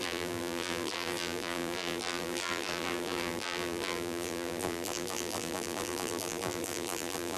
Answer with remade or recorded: remade